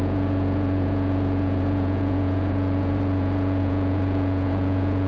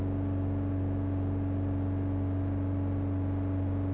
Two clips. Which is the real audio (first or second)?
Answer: second